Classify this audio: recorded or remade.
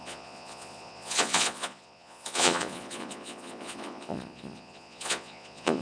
remade